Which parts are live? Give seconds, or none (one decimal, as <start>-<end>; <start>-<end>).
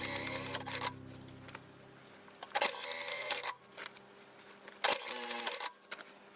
0.0-3.1; 3.6-6.4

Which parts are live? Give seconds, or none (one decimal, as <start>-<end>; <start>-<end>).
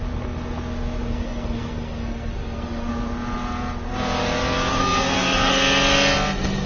0.0-1.1; 2.9-4.7; 5.5-6.7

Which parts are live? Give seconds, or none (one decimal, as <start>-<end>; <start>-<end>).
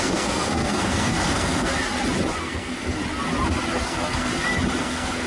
1.7-2.4; 3.0-3.8; 4.3-4.8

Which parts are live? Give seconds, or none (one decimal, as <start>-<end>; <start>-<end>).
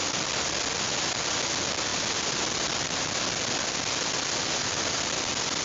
0.0-5.6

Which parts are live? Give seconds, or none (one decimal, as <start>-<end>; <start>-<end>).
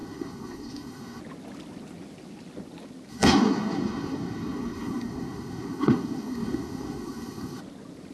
1.2-3.1; 7.6-8.1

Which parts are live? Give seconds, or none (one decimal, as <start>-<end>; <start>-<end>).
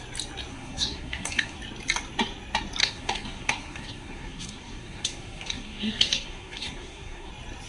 0.0-0.5; 1.6-2.8; 7.3-7.7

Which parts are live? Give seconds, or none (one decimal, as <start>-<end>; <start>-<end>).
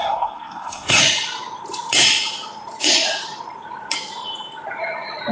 1.0-5.3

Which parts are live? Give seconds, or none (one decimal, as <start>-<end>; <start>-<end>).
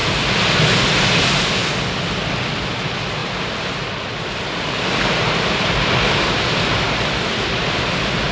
0.0-8.3